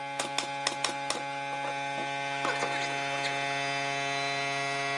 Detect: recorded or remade recorded